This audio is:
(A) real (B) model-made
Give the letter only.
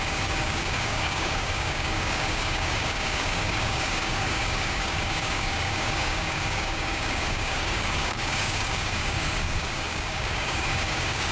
B